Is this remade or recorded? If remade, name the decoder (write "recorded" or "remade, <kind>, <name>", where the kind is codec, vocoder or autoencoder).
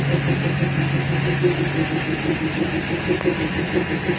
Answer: recorded